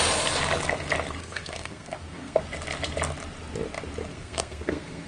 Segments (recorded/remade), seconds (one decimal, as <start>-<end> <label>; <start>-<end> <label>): 0.0-1.2 recorded; 1.2-2.4 remade; 2.4-4.1 recorded; 4.1-5.1 remade